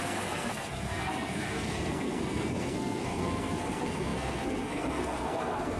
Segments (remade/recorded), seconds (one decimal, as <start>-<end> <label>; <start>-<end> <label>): 0.0-5.8 remade

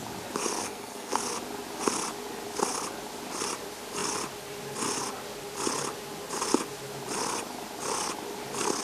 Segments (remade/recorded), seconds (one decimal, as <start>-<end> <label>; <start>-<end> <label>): 0.0-0.6 recorded; 0.6-1.2 remade; 1.2-8.8 recorded

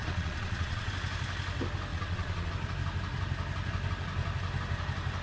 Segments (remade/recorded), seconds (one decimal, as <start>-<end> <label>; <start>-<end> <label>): 0.0-0.9 remade; 0.9-1.9 recorded; 1.9-2.5 remade; 2.5-5.2 recorded

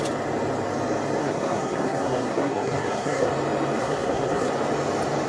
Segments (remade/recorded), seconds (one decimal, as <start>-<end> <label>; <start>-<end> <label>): 0.0-1.2 recorded; 1.2-3.3 remade; 3.3-3.8 recorded; 3.8-4.5 remade; 4.5-5.3 recorded

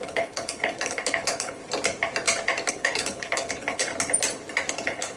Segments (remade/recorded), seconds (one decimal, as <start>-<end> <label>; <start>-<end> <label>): 0.0-1.6 remade; 1.6-2.7 recorded; 2.7-3.9 remade; 3.9-4.7 recorded; 4.7-5.2 remade

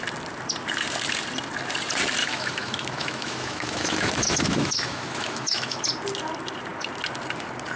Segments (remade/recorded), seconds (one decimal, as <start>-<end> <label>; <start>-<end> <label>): 0.0-2.2 recorded; 2.2-5.8 remade; 5.8-7.8 recorded